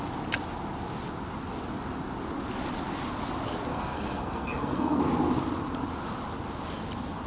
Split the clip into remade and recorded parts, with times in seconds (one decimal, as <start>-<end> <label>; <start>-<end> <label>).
0.0-3.7 recorded; 3.7-5.0 remade; 5.0-7.3 recorded